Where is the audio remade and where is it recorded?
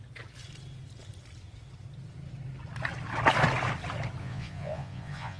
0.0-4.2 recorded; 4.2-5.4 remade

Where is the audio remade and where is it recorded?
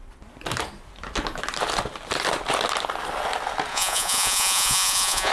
0.0-3.7 recorded; 3.7-5.3 remade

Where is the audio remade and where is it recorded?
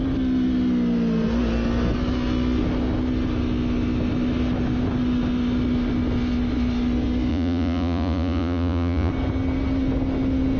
0.0-7.3 recorded; 7.3-9.1 remade; 9.1-10.6 recorded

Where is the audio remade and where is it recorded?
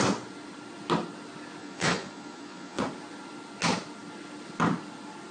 0.0-1.6 recorded; 1.6-2.8 remade; 2.8-5.3 recorded